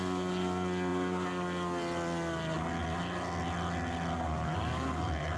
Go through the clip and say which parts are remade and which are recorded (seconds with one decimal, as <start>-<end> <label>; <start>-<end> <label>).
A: 0.0-5.4 recorded